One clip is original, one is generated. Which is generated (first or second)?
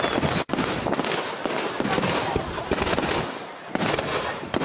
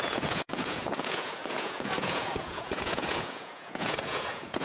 second